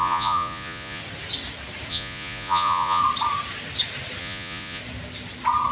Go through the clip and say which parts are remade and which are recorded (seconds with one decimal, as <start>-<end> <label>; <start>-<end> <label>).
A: 0.0-1.0 remade; 1.0-1.9 recorded; 1.9-3.0 remade; 3.0-4.2 recorded; 4.2-4.8 remade; 4.8-5.7 recorded

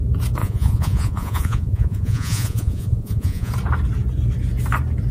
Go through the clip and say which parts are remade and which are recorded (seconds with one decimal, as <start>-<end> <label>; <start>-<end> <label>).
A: 0.0-0.4 recorded; 0.4-3.5 remade; 3.5-5.1 recorded

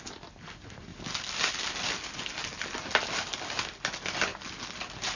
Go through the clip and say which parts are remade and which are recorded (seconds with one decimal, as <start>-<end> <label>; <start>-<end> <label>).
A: 0.0-5.2 recorded